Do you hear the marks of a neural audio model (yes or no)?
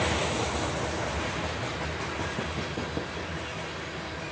no